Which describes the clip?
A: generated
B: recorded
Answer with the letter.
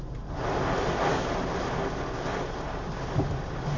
B